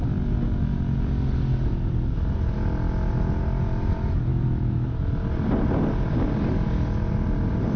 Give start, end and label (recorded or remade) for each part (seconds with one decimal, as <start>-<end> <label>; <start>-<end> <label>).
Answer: 0.0-4.3 recorded; 4.3-5.0 remade; 5.0-7.8 recorded